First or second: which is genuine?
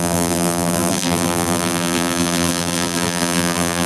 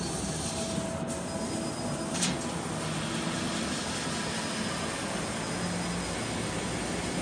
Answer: second